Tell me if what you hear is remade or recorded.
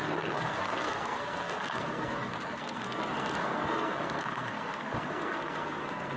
remade